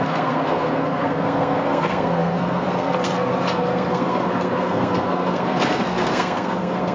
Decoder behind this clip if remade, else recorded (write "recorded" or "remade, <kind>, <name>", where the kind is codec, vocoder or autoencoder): remade, codec, SNAC